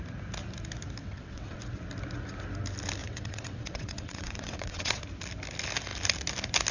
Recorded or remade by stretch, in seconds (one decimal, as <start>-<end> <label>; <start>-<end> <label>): 0.0-1.0 recorded; 1.0-1.6 remade; 1.6-3.0 recorded; 3.0-5.0 remade; 5.0-6.7 recorded